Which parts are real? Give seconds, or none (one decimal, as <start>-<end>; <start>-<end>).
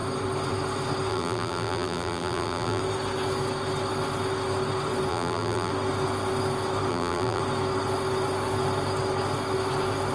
0.0-1.1; 2.8-5.1; 5.7-6.9; 7.4-10.1